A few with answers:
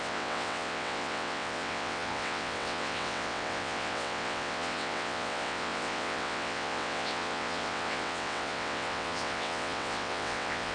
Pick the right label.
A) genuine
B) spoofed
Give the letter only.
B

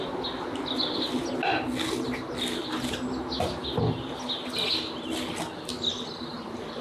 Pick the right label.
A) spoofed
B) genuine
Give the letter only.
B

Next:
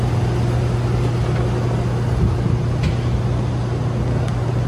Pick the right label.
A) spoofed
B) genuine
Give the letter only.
B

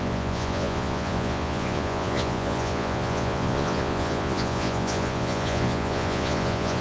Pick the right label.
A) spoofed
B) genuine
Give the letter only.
A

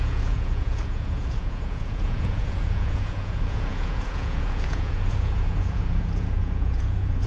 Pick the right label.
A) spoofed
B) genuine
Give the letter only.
A